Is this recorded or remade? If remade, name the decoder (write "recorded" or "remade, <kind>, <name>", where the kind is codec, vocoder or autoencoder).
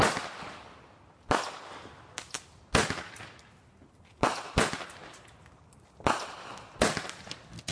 recorded